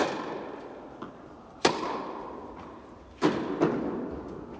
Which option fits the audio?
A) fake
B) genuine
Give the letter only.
B